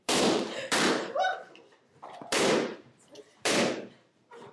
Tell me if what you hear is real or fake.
fake